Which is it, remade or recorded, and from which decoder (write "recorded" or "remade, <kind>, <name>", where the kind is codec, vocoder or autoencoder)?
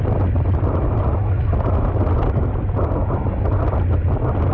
recorded